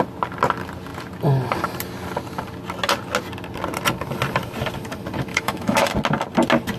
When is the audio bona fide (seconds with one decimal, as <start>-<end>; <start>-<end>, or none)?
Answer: 0.0-5.3; 5.9-6.8